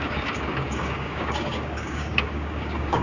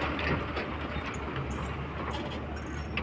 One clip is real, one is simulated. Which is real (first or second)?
second